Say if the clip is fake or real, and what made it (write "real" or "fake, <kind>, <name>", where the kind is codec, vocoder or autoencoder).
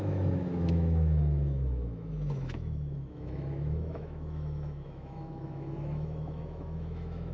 fake, autoencoder, DAC-VAE